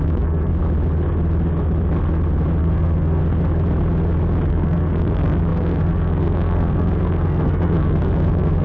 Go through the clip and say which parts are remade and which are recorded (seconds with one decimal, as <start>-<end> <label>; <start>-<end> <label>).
0.0-0.5 remade; 0.5-2.6 recorded; 2.6-3.2 remade; 3.2-4.5 recorded; 4.5-8.6 remade